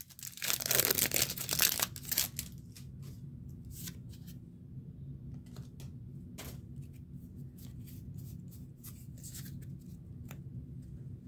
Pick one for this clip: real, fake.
real